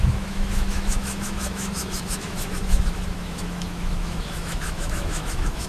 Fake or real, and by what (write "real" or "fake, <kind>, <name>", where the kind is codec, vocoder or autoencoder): fake, autoencoder, DAC-VAE